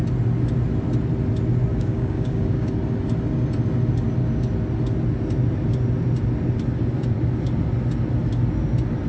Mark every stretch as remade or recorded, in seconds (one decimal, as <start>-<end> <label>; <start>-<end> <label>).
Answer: 0.0-1.7 recorded; 1.7-2.7 remade; 2.7-9.1 recorded